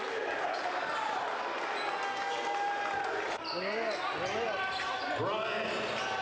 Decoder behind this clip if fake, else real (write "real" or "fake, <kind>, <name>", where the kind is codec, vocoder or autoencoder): real